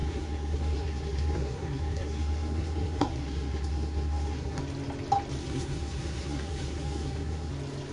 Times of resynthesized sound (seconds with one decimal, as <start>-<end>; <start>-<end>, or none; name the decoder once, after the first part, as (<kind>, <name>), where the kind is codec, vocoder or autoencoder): 0.0-4.6 (codec, SNAC); 5.4-7.5